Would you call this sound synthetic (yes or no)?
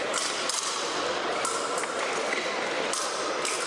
yes